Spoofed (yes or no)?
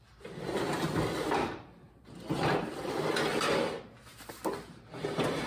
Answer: no